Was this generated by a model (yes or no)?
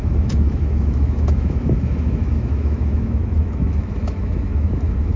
yes